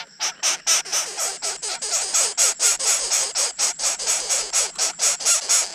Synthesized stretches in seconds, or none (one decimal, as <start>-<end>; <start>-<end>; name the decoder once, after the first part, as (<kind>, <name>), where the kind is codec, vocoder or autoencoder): 0.9-4.3 (vocoder, BigVGAN v2)